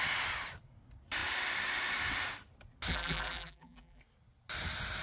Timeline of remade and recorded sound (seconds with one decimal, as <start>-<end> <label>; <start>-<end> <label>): 0.0-2.9 recorded; 2.9-4.0 remade; 4.0-5.0 recorded